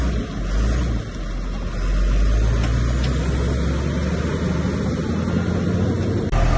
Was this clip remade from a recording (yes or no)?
no